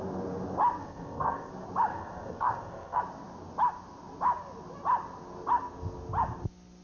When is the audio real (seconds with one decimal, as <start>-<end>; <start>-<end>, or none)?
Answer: 0.0-0.8; 1.5-1.9; 3.0-6.8